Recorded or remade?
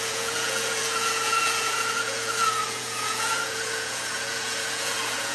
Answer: remade